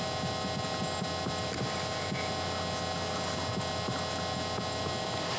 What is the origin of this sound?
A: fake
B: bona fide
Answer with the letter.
B